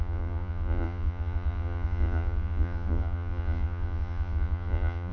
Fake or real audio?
fake